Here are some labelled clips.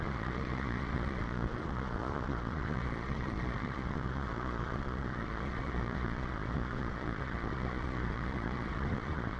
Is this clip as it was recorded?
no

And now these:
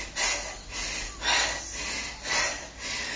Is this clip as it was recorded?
yes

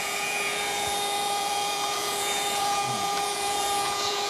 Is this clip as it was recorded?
no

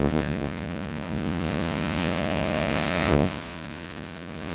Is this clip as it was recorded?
no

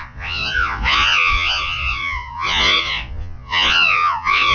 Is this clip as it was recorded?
no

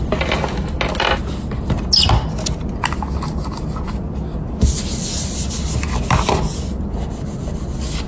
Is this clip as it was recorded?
yes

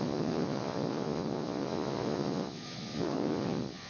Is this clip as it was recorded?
no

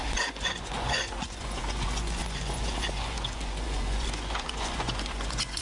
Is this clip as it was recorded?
no